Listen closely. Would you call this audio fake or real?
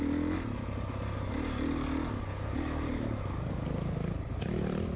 real